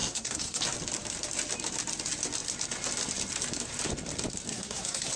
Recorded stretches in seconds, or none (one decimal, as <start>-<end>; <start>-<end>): 0.6-4.5